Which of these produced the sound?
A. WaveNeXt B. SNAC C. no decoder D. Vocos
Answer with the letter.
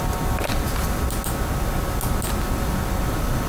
C